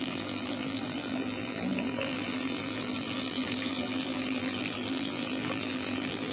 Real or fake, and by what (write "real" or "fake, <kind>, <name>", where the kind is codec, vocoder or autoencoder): fake, vocoder, BigVGAN v2